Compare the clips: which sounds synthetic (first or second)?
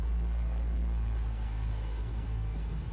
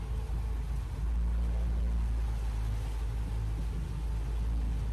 first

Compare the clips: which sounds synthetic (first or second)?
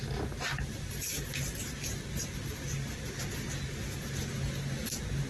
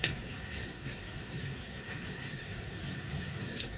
second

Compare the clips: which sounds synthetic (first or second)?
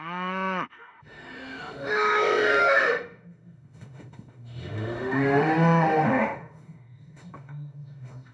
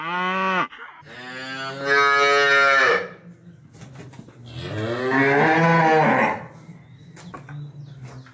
first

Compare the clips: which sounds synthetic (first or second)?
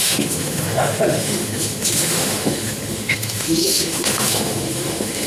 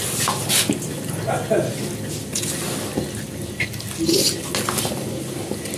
first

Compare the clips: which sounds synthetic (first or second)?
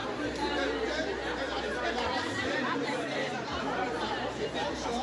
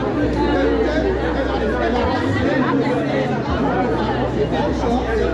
first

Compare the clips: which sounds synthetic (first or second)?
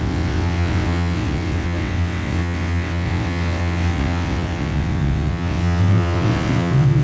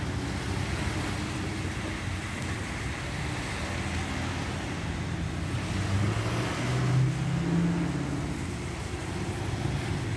first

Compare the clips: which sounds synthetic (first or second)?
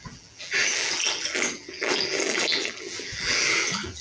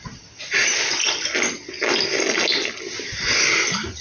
first